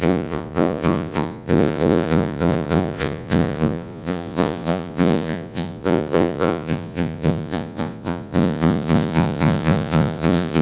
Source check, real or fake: fake